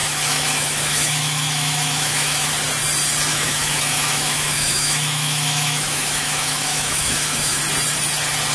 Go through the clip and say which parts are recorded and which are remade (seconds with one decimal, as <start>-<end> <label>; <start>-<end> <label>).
0.0-2.5 remade; 2.5-3.3 recorded; 3.3-7.6 remade; 7.6-8.5 recorded